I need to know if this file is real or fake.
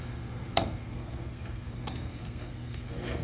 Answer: fake